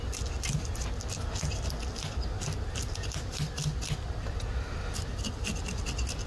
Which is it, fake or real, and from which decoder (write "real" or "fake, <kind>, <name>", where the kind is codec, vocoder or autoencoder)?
real